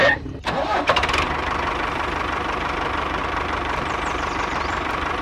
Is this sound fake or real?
fake